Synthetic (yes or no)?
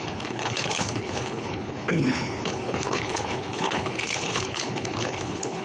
yes